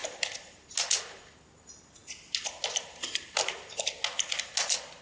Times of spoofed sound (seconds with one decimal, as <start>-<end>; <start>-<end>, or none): none